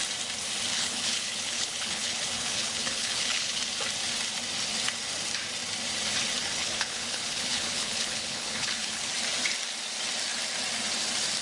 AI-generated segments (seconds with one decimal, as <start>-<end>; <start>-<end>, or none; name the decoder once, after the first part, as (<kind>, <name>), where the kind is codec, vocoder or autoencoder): 0.7-3.6 (codec, HILCodec); 6.6-9.1